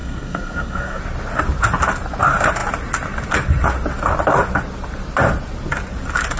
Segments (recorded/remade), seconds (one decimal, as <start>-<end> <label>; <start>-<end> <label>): 0.0-1.0 remade; 1.0-6.4 recorded